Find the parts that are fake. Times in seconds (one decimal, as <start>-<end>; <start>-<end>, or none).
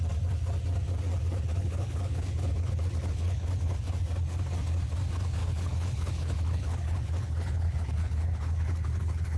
1.5-3.9; 5.4-9.4